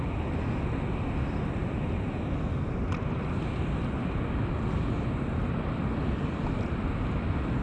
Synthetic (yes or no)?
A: no